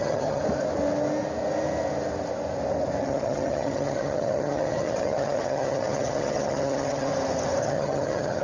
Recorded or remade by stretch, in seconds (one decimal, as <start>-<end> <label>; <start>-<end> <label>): 0.0-0.4 remade; 0.4-3.0 recorded; 3.0-7.1 remade; 7.1-7.6 recorded; 7.6-8.4 remade